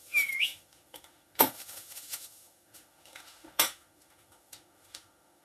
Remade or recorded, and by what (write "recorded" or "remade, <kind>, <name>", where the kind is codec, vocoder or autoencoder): remade, autoencoder, DAC-VAE